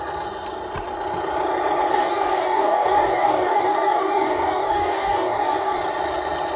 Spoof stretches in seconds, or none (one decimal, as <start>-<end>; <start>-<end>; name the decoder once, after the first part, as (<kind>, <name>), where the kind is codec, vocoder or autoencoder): 1.9-5.8 (codec, DAC)